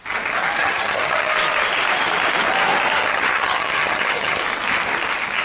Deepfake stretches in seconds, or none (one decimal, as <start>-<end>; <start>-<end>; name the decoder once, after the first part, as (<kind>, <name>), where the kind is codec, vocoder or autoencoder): 0.6-1.3 (vocoder, HiFi-GAN); 3.0-4.4